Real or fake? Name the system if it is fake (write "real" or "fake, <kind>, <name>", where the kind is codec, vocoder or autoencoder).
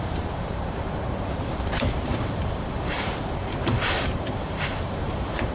fake, vocoder, BigVGAN v2